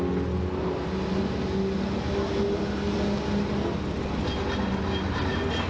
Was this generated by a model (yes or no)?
no